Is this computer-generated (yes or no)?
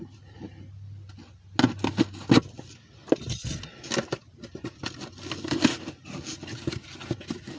no